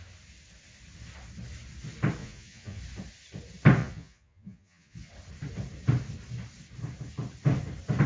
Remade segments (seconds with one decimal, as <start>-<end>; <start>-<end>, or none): 2.2-2.8; 3.8-5.1